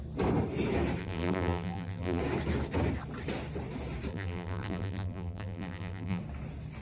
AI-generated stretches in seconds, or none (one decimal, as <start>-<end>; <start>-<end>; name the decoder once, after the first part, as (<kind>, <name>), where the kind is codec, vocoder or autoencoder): 1.0-2.2 (vocoder, BigVGAN v2); 4.1-6.2